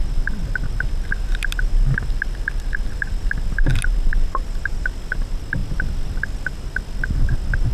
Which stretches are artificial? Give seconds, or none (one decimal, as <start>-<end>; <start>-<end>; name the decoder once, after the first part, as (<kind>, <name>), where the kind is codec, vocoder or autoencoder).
none